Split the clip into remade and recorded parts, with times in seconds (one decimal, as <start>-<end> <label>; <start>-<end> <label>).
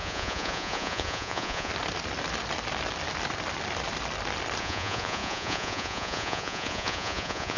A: 0.0-1.7 remade; 1.7-4.6 recorded; 4.6-7.6 remade